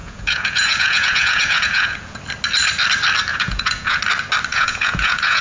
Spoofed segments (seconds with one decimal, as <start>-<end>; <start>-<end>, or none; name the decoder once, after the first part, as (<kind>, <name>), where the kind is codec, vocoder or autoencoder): 0.0-2.2 (vocoder, Vocos); 3.3-4.0; 4.5-5.4